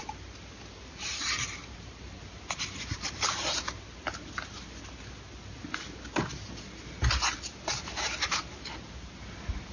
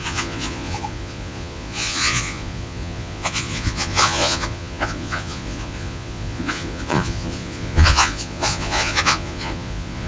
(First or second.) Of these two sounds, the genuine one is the first